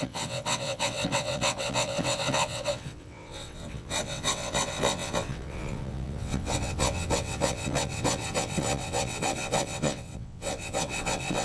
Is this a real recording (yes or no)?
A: no